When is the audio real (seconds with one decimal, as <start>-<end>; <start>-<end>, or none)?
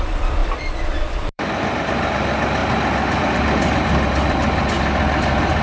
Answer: 0.0-0.4; 1.9-5.6